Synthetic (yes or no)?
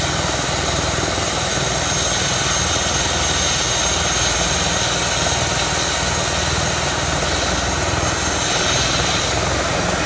no